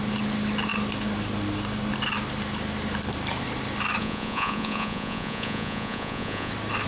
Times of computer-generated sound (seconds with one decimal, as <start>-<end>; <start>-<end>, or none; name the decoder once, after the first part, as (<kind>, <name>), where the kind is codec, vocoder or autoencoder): 4.0-6.5 (vocoder, Vocos)